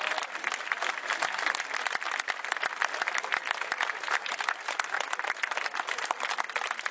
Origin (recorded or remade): recorded